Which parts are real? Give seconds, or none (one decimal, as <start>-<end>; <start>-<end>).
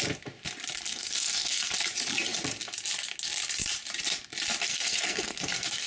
0.0-0.9; 1.7-4.7